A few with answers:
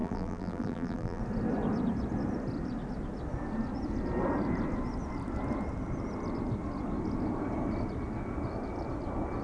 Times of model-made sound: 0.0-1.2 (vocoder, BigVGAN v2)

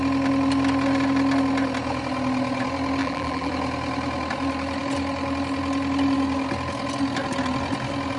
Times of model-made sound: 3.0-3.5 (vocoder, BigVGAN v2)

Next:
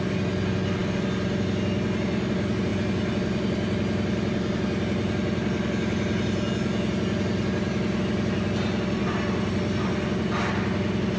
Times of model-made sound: 0.8-1.3 (vocoder, BigVGAN v2)

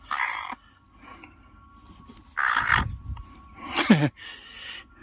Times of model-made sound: none

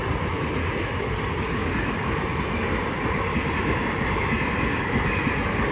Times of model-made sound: none